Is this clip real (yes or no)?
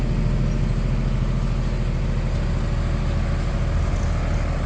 yes